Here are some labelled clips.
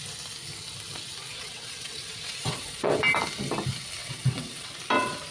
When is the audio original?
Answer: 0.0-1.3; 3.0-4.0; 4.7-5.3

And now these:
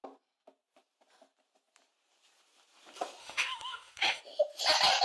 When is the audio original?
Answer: 0.0-3.2; 4.2-5.0

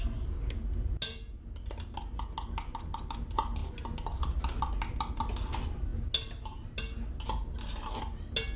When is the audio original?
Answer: 0.0-8.6

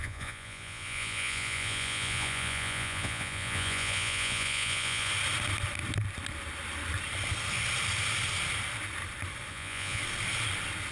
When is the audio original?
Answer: 5.1-9.5; 10.0-10.9

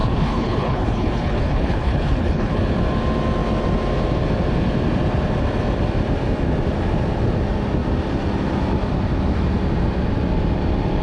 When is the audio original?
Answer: 2.6-11.0

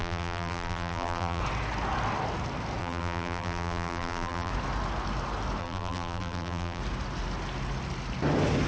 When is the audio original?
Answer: 1.4-2.8; 4.5-5.6; 6.8-8.7